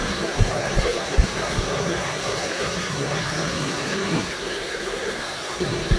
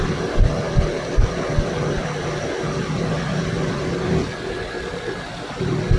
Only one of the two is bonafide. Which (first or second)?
second